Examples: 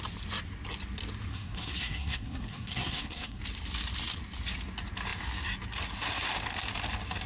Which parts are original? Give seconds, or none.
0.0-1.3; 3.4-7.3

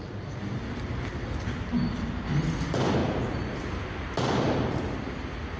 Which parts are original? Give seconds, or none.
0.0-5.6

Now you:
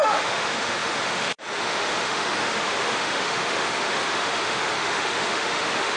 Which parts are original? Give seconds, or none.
none